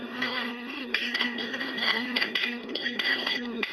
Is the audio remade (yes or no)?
yes